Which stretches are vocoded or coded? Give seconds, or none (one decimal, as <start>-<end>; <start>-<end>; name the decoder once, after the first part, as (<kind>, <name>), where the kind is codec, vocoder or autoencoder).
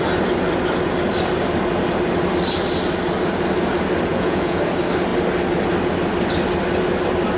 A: 4.1-4.6 (vocoder, Vocos)